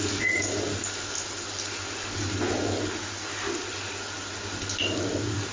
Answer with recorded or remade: recorded